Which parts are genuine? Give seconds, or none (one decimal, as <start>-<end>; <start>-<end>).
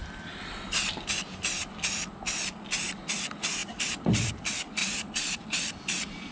0.0-3.6; 4.3-4.8